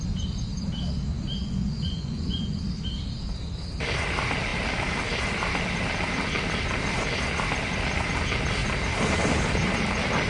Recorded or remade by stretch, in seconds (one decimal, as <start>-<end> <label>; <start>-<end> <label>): 0.0-1.4 recorded; 1.4-2.6 remade; 2.6-10.3 recorded